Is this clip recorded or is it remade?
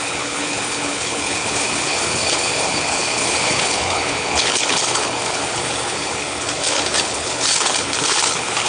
remade